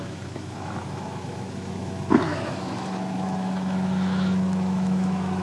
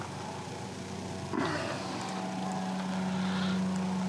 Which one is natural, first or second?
second